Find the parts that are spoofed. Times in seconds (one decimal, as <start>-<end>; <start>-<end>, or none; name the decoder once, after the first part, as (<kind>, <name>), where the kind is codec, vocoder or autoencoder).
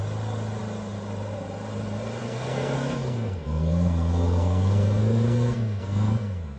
2.2-6.6 (codec, SNAC)